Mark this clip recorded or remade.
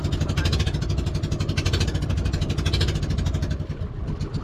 recorded